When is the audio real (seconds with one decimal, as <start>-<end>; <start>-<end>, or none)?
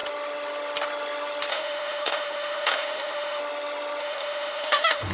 0.0-1.5; 3.4-4.0